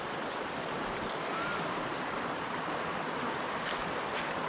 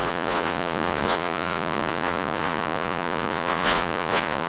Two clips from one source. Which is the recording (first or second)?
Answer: first